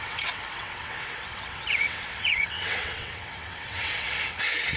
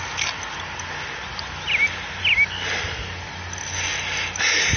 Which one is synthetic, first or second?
first